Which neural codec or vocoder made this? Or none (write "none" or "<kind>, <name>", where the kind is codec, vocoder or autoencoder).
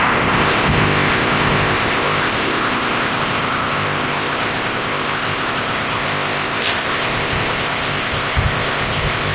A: codec, ZipCodec